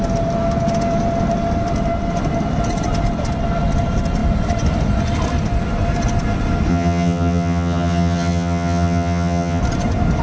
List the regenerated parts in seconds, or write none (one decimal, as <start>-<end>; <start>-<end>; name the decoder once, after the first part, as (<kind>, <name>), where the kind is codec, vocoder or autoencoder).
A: 6.7-9.6 (vocoder, HiFi-GAN)